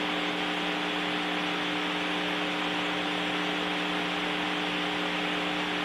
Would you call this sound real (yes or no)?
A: yes